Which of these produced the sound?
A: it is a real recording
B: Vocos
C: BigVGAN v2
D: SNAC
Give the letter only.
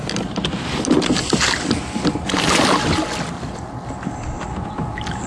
A